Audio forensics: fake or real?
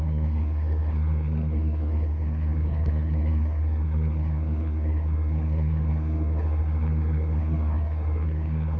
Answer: fake